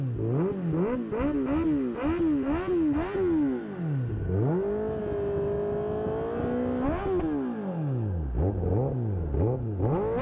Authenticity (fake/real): real